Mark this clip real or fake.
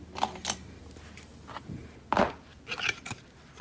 real